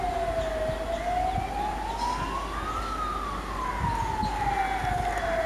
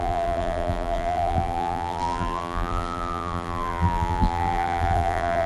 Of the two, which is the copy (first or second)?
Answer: second